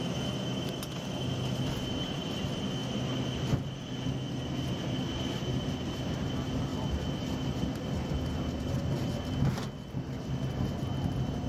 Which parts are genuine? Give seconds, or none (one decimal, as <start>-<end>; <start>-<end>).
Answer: 0.0-11.5